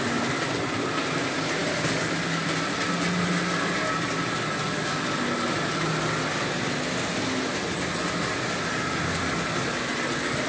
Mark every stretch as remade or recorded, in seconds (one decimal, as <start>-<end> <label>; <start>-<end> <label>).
0.0-10.5 recorded